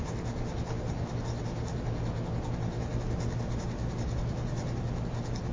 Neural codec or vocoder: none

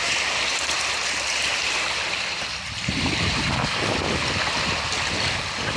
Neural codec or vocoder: none